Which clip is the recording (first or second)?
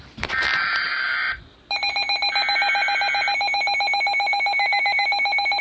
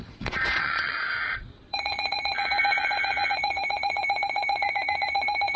first